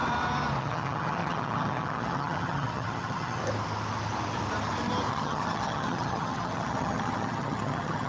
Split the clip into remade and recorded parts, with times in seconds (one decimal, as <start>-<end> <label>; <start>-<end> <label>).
0.0-0.6 recorded; 0.6-3.4 remade; 3.4-5.1 recorded; 5.1-8.1 remade

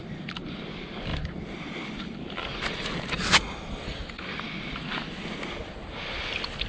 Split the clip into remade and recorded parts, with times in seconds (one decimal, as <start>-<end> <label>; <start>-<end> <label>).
0.0-6.7 recorded